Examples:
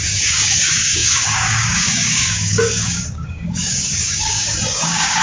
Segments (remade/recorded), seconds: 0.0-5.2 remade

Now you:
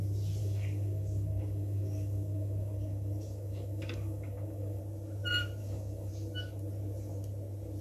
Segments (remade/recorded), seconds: 0.0-0.4 recorded; 0.4-4.8 remade; 4.8-5.6 recorded; 5.6-6.1 remade; 6.1-7.8 recorded

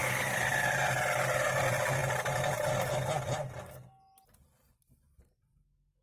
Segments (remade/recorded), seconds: 0.0-6.0 recorded

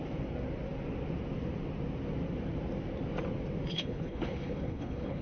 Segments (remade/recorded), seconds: 0.0-3.7 recorded; 3.7-5.2 remade

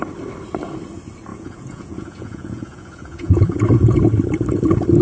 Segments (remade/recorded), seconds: 0.0-1.3 recorded; 1.3-4.0 remade; 4.0-5.0 recorded